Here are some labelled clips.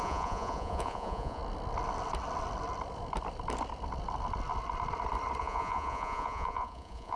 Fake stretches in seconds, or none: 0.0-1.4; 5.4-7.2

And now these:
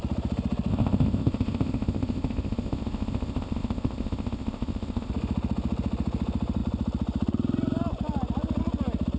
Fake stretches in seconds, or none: 0.7-5.1

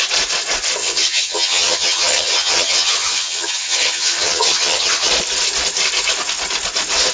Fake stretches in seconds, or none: 0.8-5.1

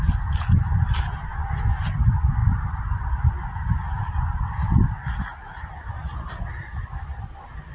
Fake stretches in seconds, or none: 2.4-3.3